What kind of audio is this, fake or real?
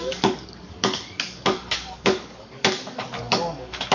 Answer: fake